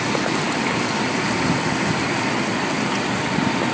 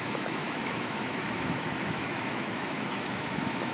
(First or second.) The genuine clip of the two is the first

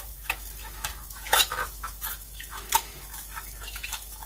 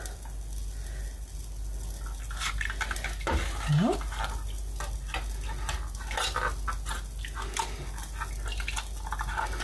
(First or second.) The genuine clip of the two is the second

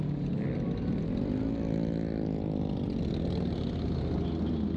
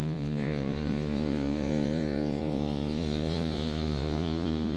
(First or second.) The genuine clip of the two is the first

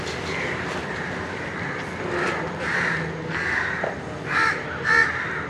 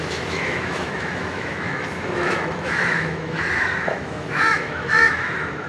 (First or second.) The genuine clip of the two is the first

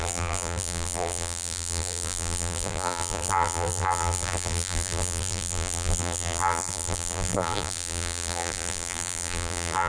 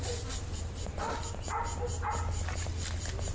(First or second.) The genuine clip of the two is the second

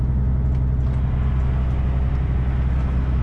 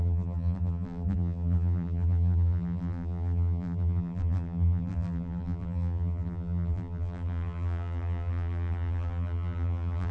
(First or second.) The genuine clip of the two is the first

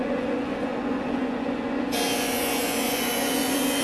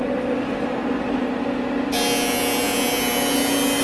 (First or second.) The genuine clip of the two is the second